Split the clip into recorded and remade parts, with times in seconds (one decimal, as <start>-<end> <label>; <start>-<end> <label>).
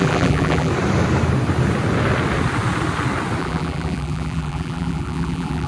0.0-0.7 remade; 0.7-3.4 recorded; 3.4-5.7 remade